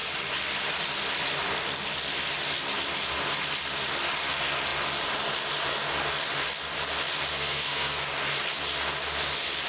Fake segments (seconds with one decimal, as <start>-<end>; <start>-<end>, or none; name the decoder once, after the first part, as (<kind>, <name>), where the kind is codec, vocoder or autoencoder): 7.3-8.0 (codec, SNAC)